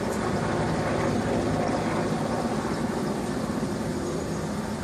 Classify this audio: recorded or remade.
recorded